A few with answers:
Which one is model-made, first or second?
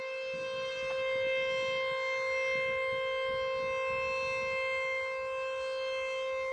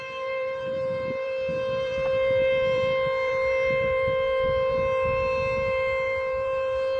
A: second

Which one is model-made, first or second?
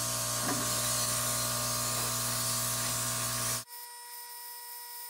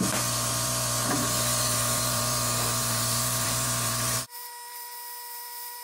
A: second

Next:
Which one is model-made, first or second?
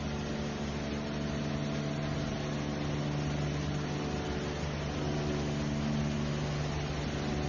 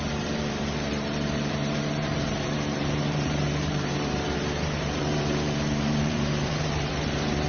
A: second